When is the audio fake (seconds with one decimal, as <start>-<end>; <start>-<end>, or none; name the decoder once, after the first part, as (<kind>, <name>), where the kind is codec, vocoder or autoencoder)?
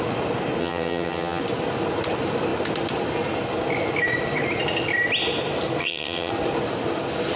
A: 0.6-1.4 (vocoder, HiFi-GAN); 5.8-6.3